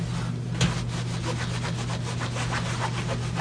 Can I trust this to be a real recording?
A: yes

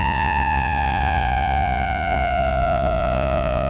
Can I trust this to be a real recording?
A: no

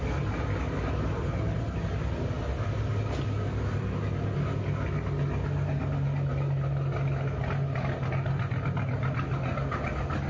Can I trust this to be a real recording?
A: yes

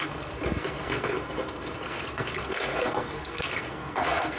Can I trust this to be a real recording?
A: no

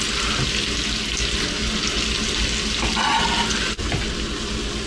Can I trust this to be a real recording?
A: yes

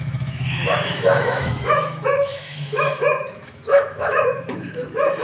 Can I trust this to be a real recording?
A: no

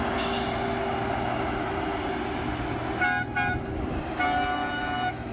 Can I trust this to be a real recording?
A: yes